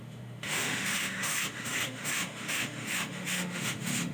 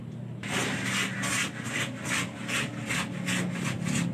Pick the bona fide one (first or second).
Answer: second